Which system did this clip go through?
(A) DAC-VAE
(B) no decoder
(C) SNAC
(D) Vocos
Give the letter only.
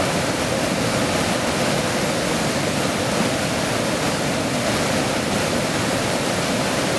B